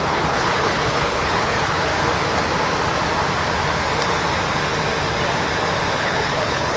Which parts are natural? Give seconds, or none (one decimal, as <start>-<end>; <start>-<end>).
1.9-6.0